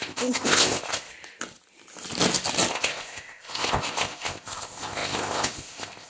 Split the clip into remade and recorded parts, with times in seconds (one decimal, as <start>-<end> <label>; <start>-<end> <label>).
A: 0.0-1.1 remade; 1.1-2.7 recorded; 2.7-6.1 remade